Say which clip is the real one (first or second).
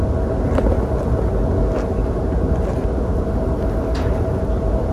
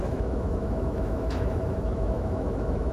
first